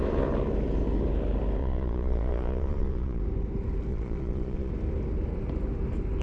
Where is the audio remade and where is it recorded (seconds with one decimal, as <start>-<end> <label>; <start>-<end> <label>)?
0.0-1.6 recorded; 1.6-3.2 remade; 3.2-3.9 recorded; 3.9-4.7 remade; 4.7-6.2 recorded